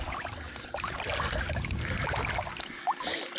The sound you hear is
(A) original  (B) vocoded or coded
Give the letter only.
A